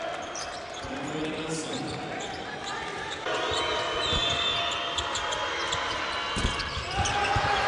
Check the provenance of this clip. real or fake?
real